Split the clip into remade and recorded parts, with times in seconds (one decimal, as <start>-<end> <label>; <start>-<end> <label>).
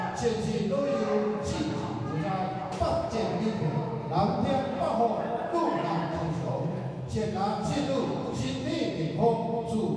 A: 0.0-5.5 recorded; 5.5-8.9 remade; 8.9-10.0 recorded